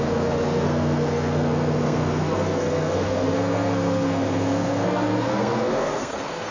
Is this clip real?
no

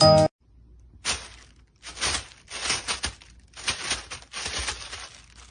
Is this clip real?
yes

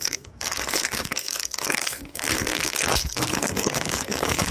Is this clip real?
no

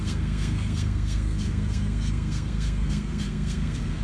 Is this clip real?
no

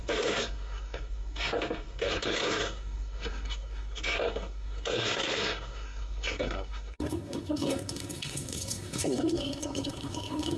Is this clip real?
no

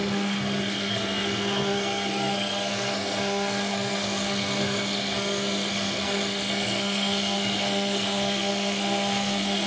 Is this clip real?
no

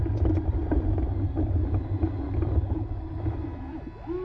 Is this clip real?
yes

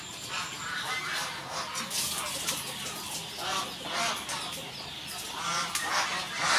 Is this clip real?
yes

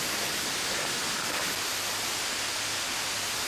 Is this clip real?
yes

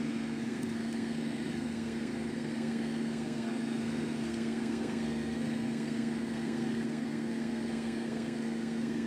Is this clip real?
no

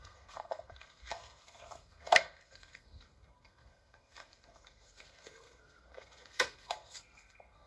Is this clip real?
no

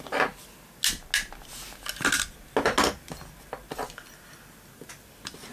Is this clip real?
yes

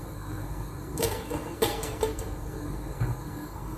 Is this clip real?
no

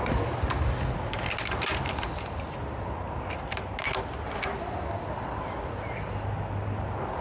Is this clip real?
yes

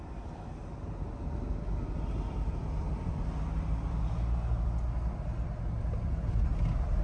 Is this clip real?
yes